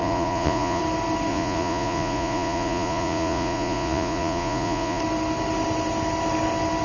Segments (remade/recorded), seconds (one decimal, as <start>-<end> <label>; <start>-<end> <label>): 0.0-0.8 remade; 0.8-1.3 recorded; 1.3-5.0 remade; 5.0-6.8 recorded